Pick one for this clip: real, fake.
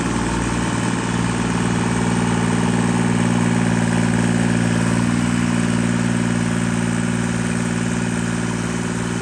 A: real